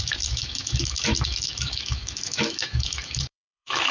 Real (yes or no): no